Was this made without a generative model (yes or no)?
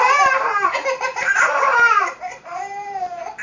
no